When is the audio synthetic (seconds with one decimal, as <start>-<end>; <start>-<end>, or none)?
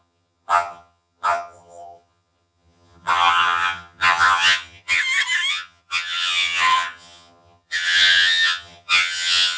0.0-5.0; 5.5-9.6